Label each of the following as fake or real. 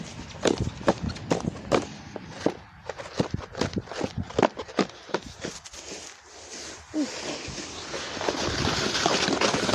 real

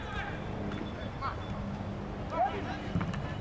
real